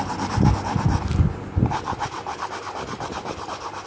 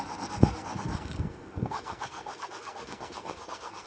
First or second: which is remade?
second